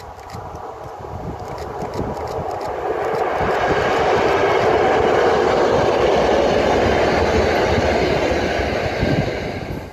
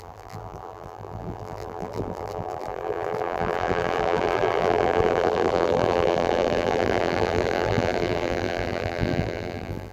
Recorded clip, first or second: first